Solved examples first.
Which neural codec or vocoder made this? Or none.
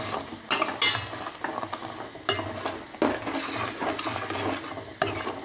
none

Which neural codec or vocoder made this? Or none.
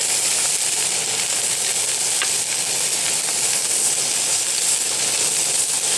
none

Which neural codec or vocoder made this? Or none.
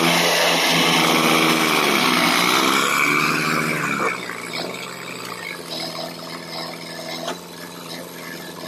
none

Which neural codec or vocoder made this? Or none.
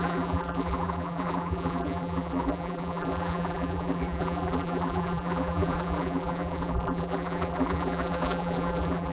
vocoder, BigVGAN v2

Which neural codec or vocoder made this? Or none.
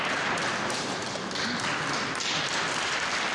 none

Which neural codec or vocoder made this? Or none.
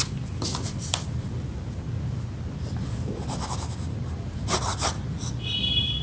vocoder, BigVGAN v2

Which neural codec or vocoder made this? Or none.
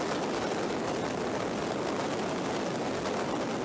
none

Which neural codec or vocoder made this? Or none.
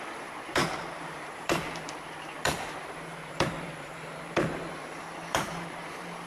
vocoder, BigVGAN v2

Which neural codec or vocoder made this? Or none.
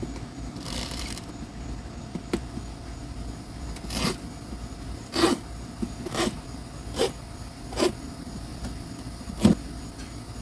vocoder, BigVGAN v2